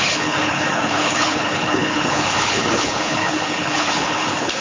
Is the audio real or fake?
fake